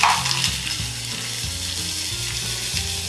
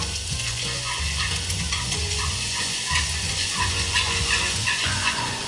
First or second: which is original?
first